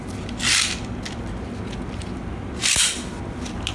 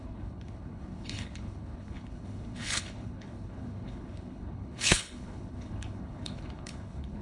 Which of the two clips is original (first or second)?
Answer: first